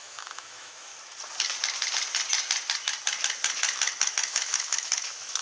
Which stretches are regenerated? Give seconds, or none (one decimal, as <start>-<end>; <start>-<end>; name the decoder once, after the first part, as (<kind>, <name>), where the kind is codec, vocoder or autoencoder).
0.0-0.9 (autoencoder, DAC-VAE); 4.1-5.4